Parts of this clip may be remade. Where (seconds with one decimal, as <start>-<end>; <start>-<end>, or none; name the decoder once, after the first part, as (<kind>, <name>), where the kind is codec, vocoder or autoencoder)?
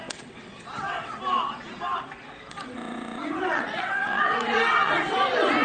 0.0-1.2 (vocoder, WaveNeXt); 2.5-5.6